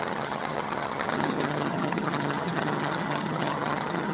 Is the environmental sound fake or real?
fake